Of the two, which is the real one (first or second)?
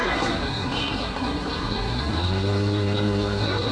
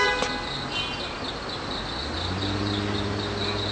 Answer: second